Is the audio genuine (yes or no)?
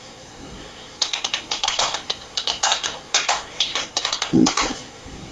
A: no